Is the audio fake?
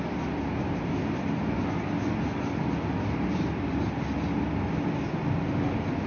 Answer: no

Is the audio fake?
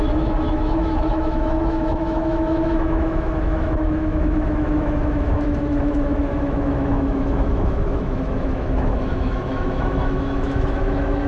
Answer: yes